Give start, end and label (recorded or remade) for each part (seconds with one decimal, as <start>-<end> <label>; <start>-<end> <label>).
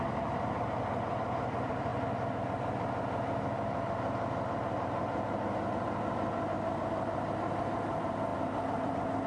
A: 0.0-1.9 remade; 1.9-6.8 recorded; 6.8-9.3 remade